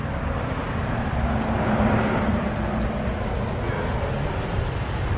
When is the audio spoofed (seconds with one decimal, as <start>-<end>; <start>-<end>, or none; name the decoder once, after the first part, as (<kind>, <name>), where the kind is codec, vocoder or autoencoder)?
none